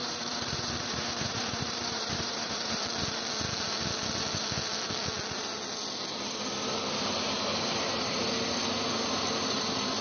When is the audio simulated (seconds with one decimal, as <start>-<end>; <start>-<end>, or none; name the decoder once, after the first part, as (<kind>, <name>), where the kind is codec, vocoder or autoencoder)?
0.0-2.8 (vocoder, BigVGAN v2)